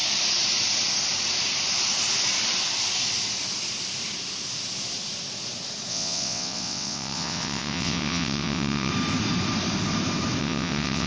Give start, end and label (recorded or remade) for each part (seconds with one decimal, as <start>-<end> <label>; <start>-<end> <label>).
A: 0.0-5.9 recorded; 5.9-8.9 remade; 8.9-10.4 recorded; 10.4-11.1 remade